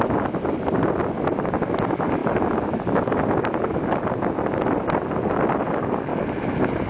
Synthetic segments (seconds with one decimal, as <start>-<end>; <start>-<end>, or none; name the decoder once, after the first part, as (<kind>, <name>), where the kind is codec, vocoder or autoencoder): none